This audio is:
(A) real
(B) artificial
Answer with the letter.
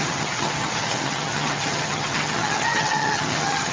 B